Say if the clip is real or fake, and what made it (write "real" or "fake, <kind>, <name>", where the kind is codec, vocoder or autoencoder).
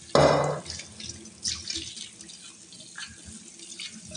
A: real